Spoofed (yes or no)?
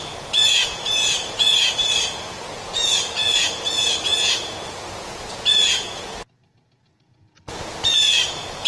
yes